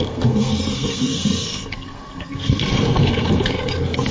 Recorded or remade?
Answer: remade